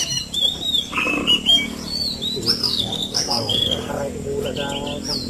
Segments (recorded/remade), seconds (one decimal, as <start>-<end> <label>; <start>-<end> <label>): 0.0-2.6 recorded; 2.6-3.9 remade; 3.9-5.3 recorded

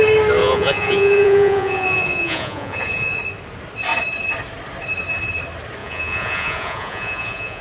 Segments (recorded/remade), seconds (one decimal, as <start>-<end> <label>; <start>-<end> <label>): 0.0-0.4 recorded; 0.4-3.2 remade; 3.2-5.8 recorded; 5.8-7.6 remade